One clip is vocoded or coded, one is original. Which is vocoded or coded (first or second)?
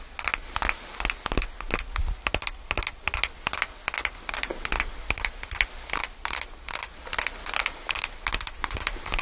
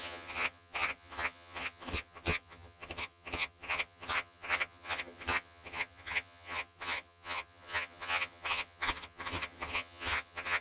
second